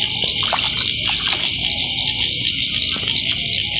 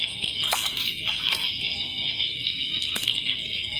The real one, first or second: first